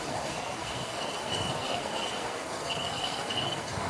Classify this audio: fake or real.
fake